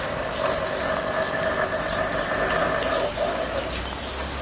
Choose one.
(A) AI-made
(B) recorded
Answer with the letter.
B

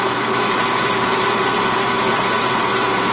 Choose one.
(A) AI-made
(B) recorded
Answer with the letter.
B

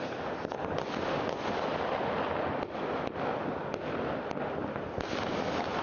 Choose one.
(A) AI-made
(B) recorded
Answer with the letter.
B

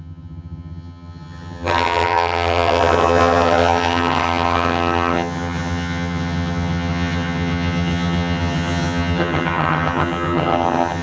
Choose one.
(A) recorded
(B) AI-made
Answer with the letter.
B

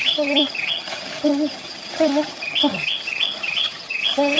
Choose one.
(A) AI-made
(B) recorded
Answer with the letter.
A